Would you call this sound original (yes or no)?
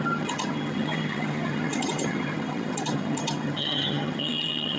no